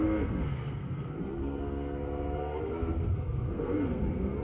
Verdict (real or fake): fake